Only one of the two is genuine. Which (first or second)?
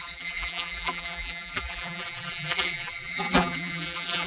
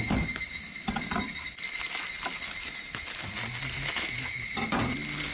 second